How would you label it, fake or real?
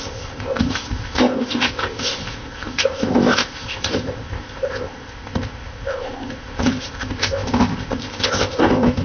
fake